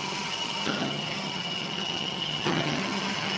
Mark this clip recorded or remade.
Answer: remade